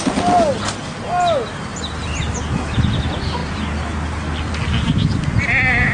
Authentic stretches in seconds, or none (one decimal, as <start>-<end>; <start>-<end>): 0.0-5.9

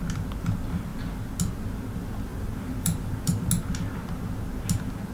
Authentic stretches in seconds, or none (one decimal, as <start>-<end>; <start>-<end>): 0.0-2.3; 3.5-5.1

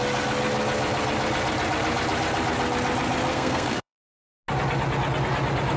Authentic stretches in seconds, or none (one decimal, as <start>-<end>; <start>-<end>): 0.0-3.3; 4.0-5.8

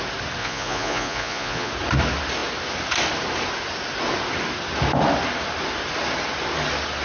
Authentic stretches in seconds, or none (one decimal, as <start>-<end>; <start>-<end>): 0.0-0.4; 1.7-7.0

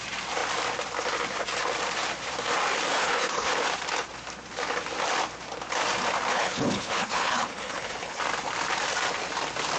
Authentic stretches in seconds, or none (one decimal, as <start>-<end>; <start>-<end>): 0.0-2.9; 3.5-6.3; 8.2-9.8